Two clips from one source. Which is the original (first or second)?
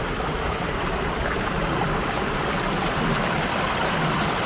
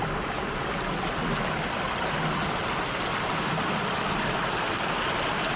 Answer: second